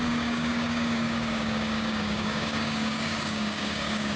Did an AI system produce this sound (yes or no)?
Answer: yes